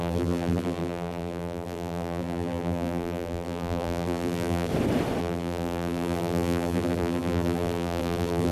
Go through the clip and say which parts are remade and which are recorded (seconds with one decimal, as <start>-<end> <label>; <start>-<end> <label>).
0.0-4.7 remade; 4.7-5.2 recorded; 5.2-8.5 remade